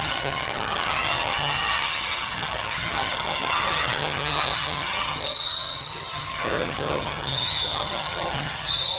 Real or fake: fake